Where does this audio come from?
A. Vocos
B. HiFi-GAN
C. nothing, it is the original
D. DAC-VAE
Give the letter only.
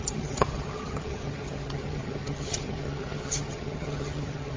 B